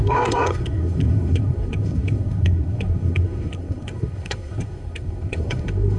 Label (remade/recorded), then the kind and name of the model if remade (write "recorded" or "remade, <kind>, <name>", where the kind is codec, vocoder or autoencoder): remade, codec, SNAC